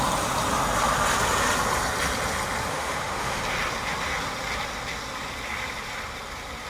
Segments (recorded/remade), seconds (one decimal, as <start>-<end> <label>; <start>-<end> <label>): 0.0-2.7 recorded; 2.7-3.4 remade; 3.4-6.7 recorded

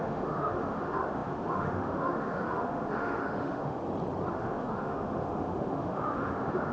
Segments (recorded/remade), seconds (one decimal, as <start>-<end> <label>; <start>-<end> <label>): 0.0-3.8 remade; 3.8-4.3 recorded; 4.3-6.7 remade

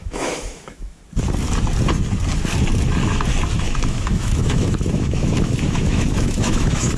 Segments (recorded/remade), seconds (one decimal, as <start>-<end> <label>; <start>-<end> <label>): 0.0-1.0 remade; 1.0-3.6 recorded; 3.6-7.0 remade

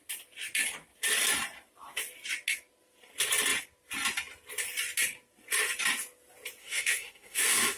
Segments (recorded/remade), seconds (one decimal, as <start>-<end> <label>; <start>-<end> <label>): 0.0-6.6 recorded; 6.6-7.8 remade